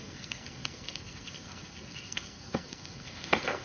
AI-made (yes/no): yes